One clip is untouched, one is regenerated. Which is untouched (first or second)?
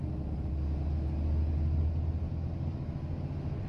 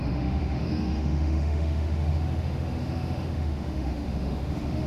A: first